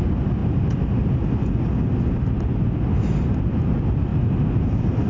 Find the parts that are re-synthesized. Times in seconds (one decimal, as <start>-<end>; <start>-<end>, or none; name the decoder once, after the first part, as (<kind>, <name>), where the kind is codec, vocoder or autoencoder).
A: none